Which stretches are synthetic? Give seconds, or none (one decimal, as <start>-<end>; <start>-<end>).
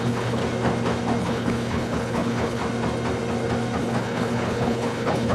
0.0-0.4; 1.2-2.6; 3.8-5.3